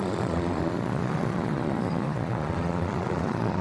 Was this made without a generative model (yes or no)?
no